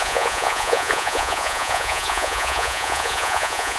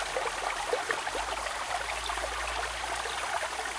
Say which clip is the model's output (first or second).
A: first